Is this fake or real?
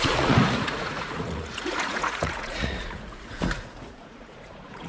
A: fake